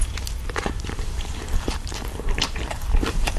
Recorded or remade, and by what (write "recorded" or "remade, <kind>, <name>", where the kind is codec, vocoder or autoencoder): remade, vocoder, BigVGAN v2